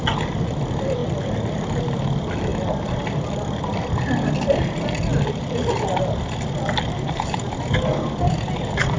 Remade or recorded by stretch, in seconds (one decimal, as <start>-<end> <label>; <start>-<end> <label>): 0.0-1.0 recorded; 1.0-1.8 remade; 1.8-5.1 recorded; 5.1-7.4 remade; 7.4-9.0 recorded